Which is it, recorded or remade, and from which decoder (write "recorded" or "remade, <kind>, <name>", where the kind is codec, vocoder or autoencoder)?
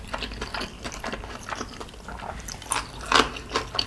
recorded